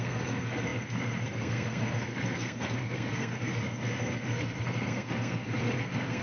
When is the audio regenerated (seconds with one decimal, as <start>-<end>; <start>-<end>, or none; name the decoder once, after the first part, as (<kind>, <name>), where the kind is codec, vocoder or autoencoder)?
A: 0.0-6.2 (codec, SNAC)